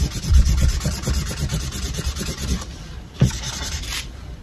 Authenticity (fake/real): real